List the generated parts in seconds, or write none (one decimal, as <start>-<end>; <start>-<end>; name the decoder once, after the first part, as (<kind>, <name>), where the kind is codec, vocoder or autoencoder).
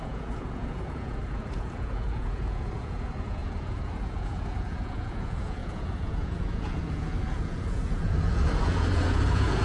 0.0-9.6 (vocoder, Vocos)